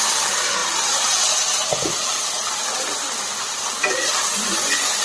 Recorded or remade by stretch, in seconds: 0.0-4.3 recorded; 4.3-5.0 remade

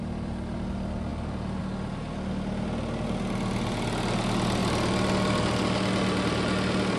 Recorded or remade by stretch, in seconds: 0.0-7.0 recorded

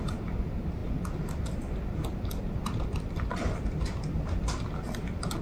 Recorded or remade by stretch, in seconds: 0.0-5.4 recorded

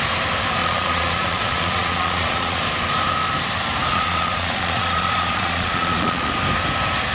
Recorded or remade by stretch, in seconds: 0.0-0.6 recorded; 0.6-2.6 remade; 2.6-3.9 recorded; 3.9-6.3 remade; 6.3-7.1 recorded

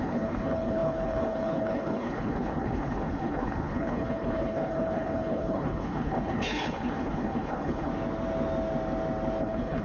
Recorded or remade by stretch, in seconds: 0.0-7.9 remade; 7.9-9.4 recorded; 9.4-9.8 remade

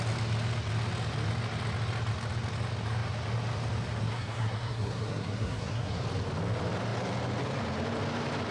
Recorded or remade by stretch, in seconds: 0.0-4.0 recorded; 4.0-6.0 remade; 6.0-8.5 recorded

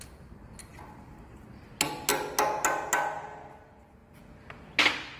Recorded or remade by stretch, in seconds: 0.0-5.2 recorded